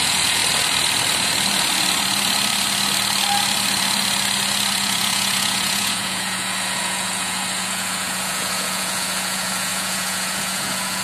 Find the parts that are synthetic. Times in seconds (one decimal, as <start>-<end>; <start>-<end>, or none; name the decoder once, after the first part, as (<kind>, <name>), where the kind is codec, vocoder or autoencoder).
0.0-0.4 (vocoder, Vocos); 4.7-11.0